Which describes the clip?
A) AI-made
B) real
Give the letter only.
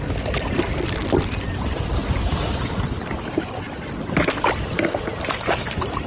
B